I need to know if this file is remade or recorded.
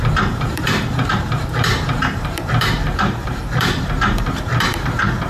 remade